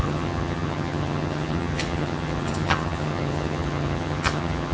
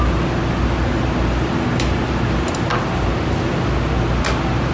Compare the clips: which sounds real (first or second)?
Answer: second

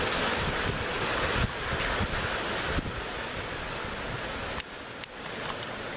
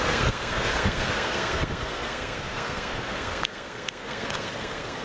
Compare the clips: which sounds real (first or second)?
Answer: first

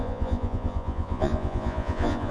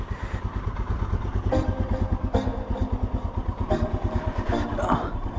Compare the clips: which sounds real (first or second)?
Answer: second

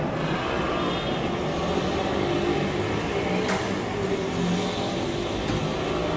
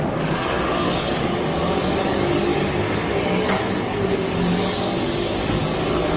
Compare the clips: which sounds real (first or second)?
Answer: first